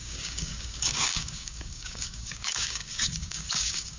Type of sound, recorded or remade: remade